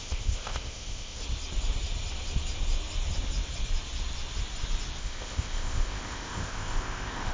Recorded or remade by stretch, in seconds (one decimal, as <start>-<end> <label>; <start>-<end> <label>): 0.0-1.2 remade; 1.2-5.0 recorded; 5.0-7.3 remade